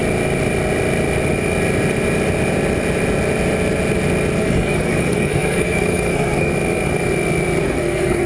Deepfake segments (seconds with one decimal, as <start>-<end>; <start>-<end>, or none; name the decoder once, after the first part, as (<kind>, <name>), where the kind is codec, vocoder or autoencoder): 4.4-6.5 (codec, SNAC); 7.6-8.3